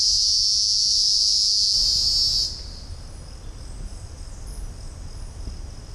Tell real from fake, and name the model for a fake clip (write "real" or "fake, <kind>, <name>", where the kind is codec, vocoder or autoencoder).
real